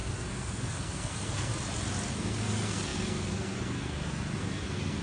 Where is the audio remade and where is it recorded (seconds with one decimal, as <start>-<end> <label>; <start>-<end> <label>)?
0.0-1.5 remade; 1.5-2.1 recorded; 2.1-5.0 remade